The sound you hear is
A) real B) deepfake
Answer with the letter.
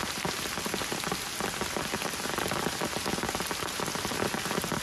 A